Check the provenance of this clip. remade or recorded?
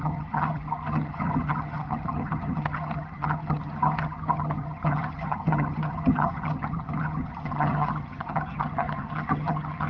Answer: remade